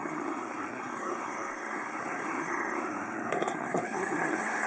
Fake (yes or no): yes